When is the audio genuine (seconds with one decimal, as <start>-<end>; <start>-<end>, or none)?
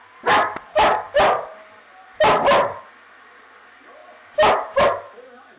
0.0-5.6